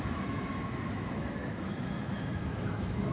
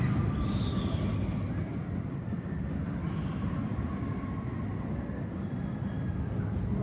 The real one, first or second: second